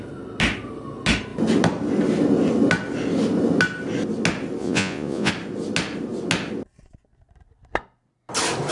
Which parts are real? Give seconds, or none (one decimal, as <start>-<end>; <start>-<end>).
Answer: 0.0-4.6; 5.3-8.7